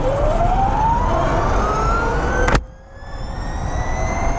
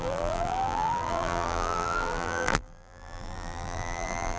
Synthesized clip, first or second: second